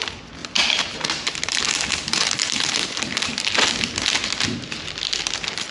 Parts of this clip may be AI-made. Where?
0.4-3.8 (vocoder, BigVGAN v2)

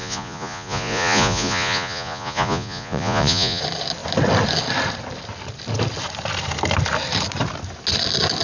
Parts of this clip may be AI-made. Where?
0.0-3.6 (vocoder, Vocos)